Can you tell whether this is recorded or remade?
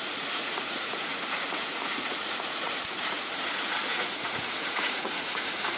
remade